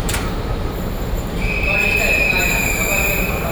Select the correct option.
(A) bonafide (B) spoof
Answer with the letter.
B